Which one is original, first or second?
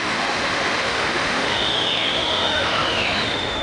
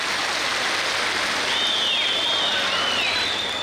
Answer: second